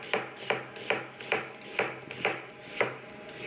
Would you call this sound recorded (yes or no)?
yes